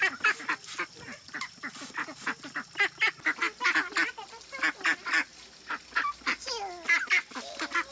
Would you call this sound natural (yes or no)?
yes